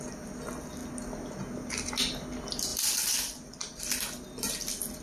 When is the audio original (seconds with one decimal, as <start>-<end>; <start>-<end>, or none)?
0.0-2.7; 3.8-5.0